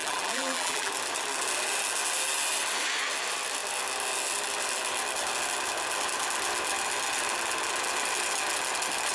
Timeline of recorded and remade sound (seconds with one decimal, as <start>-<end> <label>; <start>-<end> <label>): 0.0-0.9 remade; 0.9-9.1 recorded